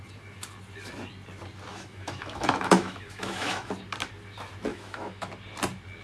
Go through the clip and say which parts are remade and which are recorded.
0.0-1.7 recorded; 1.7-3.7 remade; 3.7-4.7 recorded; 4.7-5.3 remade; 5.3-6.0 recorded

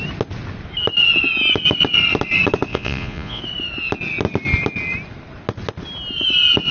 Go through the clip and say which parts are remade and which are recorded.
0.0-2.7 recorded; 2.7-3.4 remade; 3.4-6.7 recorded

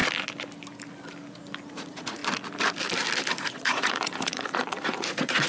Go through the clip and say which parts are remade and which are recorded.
0.0-1.7 recorded; 1.7-2.2 remade; 2.2-3.3 recorded; 3.3-5.5 remade